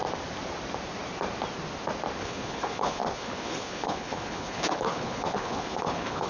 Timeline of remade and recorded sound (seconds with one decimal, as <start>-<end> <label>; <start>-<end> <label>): 0.0-2.2 recorded; 2.2-6.3 remade